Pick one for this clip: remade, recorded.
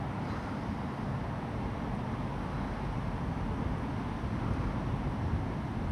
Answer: recorded